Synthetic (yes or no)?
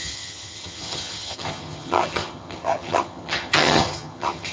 yes